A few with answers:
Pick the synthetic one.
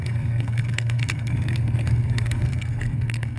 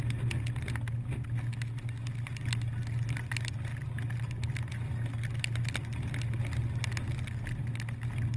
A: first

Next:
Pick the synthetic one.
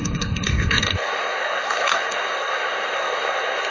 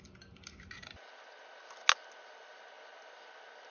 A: first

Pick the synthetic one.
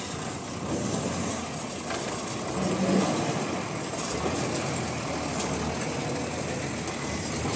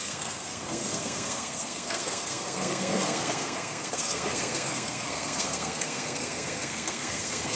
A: second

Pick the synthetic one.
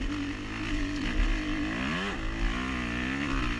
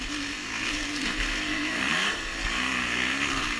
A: second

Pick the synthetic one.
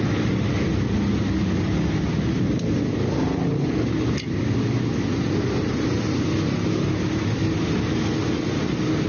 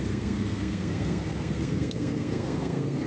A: second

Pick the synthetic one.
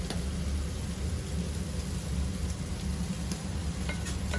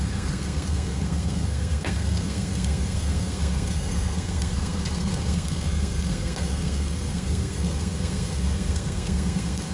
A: second